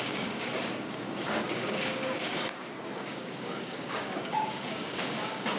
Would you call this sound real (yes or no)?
no